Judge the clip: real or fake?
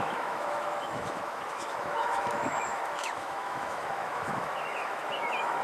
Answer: fake